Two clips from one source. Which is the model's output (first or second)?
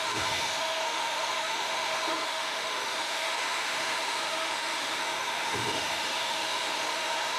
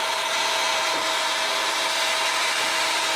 first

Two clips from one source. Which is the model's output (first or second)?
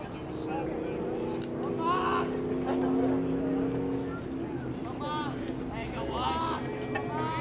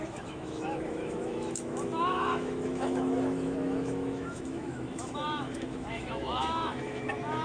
second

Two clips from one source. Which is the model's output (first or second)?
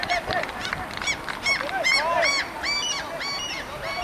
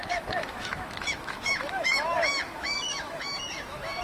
second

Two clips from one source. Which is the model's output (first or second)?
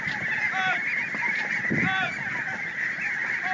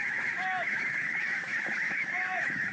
second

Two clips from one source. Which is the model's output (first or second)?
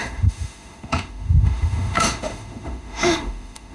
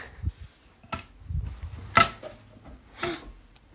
first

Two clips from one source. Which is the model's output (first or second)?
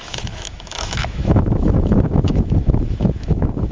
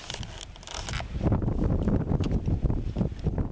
first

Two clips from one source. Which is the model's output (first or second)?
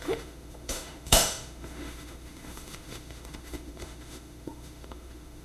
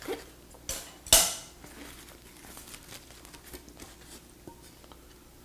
first